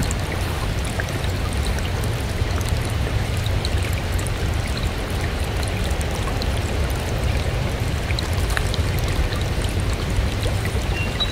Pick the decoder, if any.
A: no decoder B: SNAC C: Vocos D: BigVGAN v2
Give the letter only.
D